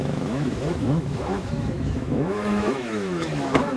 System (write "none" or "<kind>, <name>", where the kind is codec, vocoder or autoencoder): autoencoder, DAC-VAE